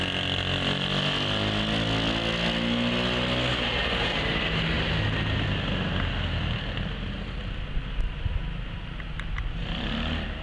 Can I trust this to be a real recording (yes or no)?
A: yes